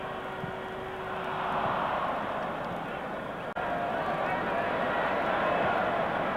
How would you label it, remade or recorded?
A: recorded